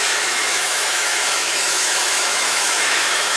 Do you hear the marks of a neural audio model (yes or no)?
yes